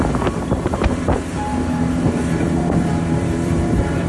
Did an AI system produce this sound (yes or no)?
yes